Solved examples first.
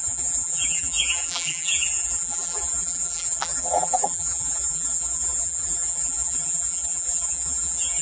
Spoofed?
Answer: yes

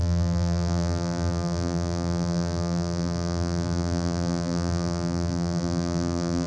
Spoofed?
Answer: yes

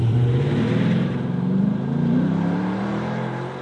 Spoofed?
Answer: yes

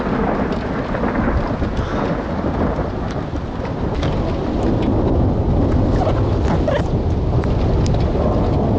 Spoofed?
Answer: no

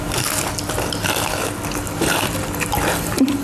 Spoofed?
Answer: yes